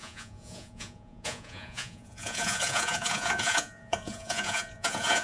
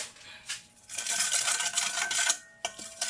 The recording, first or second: second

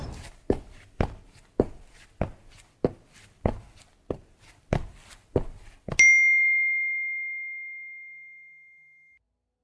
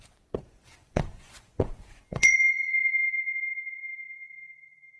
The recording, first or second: first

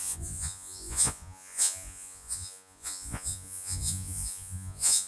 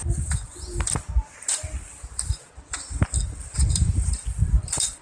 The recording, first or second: second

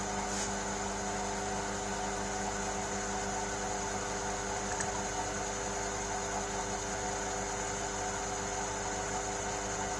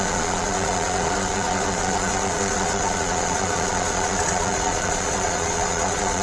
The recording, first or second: first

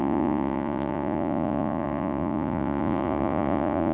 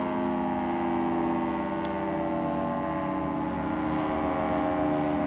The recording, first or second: second